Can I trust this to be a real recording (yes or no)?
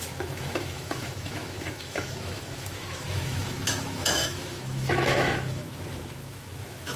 no